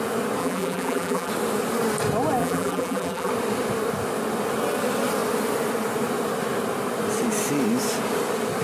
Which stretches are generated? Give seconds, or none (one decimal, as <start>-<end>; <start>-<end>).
0.4-1.3; 2.4-3.3